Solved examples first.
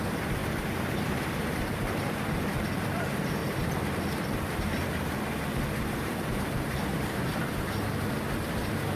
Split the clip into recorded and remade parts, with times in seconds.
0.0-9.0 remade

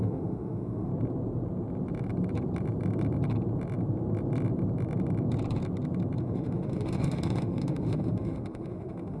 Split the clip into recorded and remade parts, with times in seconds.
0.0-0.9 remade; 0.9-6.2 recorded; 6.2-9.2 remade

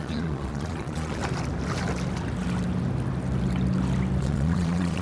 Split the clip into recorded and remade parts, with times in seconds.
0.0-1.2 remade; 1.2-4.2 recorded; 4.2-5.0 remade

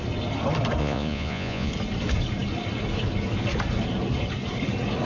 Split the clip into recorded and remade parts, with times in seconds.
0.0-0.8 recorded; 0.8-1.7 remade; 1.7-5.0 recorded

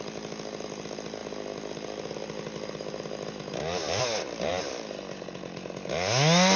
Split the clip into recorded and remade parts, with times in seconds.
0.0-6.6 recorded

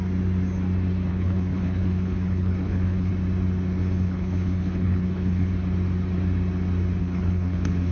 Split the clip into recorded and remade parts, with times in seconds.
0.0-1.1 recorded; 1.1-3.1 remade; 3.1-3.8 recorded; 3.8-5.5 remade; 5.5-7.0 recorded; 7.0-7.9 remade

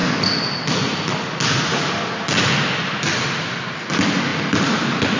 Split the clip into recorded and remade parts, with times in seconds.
0.0-5.2 recorded

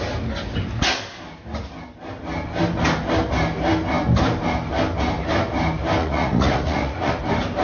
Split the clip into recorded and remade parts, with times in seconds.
0.0-6.0 recorded; 6.0-7.1 remade; 7.1-7.6 recorded